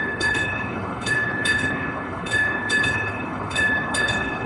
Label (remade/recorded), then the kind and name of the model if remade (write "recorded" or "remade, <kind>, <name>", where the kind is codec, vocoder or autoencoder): remade, codec, HILCodec